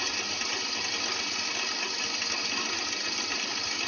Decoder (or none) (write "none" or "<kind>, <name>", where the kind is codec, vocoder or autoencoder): none